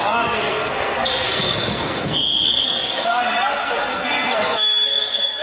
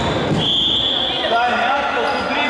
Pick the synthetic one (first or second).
first